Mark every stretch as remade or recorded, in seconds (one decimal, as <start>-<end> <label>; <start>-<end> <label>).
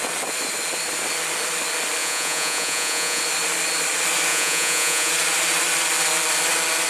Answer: 0.0-2.0 recorded; 2.0-3.2 remade; 3.2-4.3 recorded; 4.3-5.1 remade; 5.1-6.9 recorded